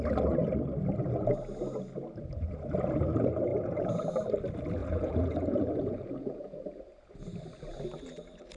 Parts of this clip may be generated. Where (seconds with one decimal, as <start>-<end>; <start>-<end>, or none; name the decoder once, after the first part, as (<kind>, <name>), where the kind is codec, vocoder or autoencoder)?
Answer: 3.5-4.1 (vocoder, Vocos); 4.8-6.8